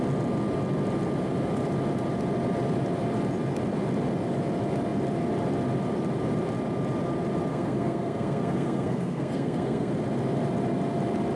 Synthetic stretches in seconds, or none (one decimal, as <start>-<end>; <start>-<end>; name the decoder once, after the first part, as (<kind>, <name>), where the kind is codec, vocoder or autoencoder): 7.5-9.9 (codec, SNAC)